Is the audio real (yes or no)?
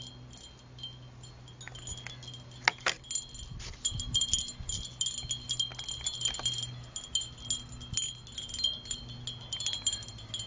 yes